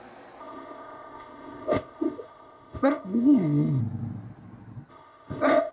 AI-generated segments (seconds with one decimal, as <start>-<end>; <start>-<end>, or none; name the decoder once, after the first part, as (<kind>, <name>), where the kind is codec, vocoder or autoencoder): 0.4-3.8 (codec, ZipCodec); 4.9-5.7